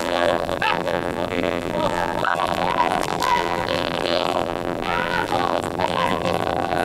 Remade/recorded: remade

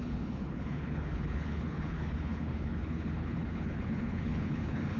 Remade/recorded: remade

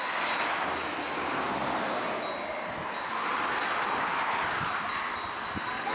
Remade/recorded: recorded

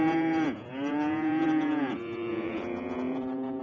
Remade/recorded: remade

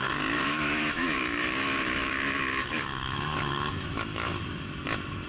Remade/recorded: remade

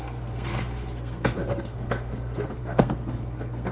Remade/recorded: remade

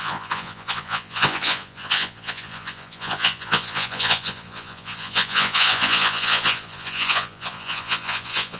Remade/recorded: remade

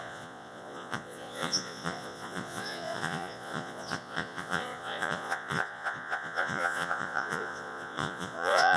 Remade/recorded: remade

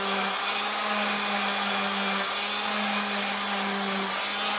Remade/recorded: recorded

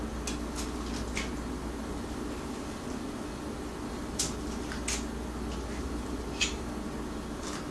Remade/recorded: recorded